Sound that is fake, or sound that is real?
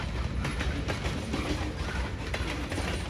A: real